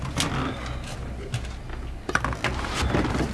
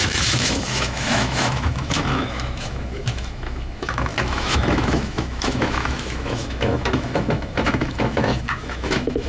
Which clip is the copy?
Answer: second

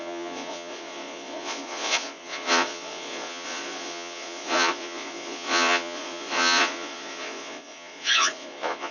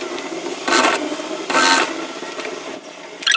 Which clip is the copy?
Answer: first